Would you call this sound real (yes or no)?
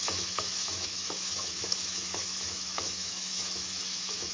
no